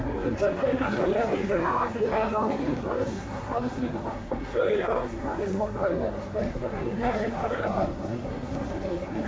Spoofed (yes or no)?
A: yes